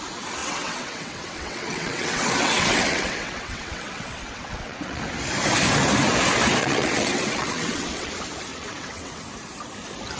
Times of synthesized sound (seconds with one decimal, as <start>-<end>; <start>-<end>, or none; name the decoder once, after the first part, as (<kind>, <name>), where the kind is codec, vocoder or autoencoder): 0.4-5.0 (vocoder, WaveNeXt); 6.6-8.1; 8.5-9.2